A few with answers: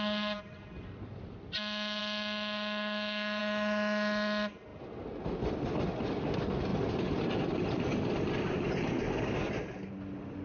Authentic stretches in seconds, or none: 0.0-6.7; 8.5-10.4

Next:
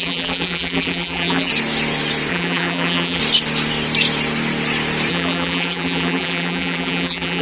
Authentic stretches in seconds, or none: 1.5-2.3; 3.2-5.1

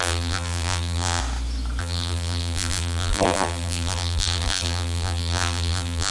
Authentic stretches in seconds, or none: 1.2-1.8

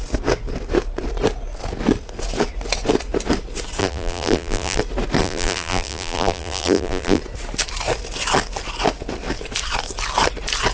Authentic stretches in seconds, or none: 0.0-3.8; 4.8-5.2; 7.2-10.7

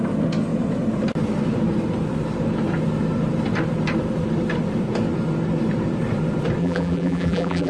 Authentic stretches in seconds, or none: 0.0-6.6

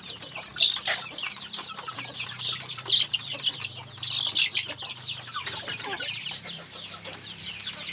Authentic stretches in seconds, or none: 0.0-0.5; 3.0-4.4; 5.1-5.6